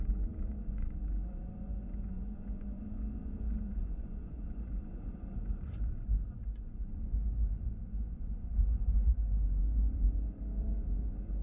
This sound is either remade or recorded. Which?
remade